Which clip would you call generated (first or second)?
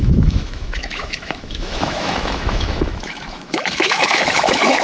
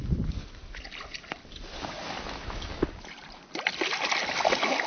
first